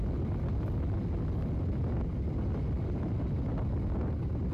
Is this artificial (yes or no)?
no